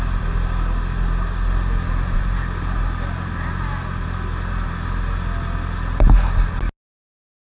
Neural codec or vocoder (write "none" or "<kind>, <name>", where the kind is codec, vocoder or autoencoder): none